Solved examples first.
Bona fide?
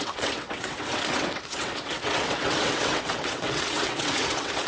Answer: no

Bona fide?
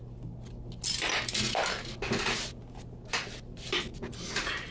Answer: yes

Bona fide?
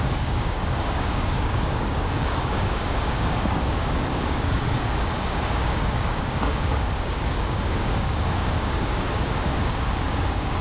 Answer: no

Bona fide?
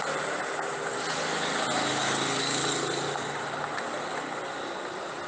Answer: yes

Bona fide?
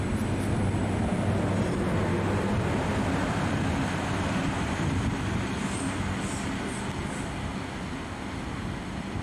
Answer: yes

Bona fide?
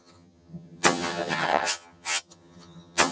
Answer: no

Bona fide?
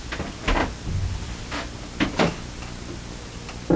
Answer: yes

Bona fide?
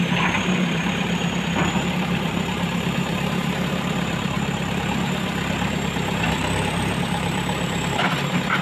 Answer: no